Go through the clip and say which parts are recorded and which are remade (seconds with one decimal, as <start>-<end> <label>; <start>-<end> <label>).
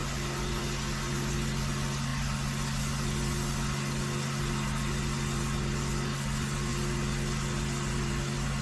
0.0-8.6 recorded